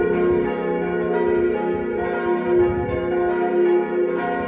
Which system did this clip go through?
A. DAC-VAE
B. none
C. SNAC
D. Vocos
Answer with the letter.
B